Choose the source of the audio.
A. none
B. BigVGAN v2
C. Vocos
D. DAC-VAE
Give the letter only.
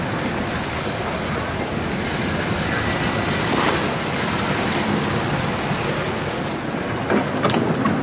A